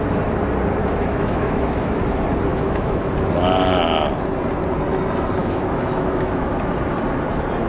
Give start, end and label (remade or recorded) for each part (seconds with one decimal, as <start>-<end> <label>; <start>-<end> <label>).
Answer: 0.0-0.8 recorded; 0.8-2.0 remade; 2.0-2.5 recorded; 2.5-3.1 remade; 3.1-5.4 recorded; 5.4-6.5 remade; 6.5-7.7 recorded